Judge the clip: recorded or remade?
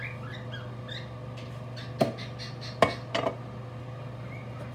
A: recorded